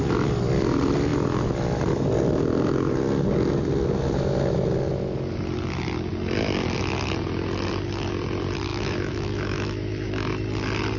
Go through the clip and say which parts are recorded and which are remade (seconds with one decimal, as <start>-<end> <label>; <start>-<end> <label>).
0.0-8.7 recorded; 8.7-10.3 remade; 10.3-11.0 recorded